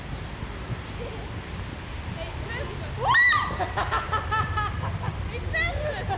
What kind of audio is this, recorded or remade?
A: recorded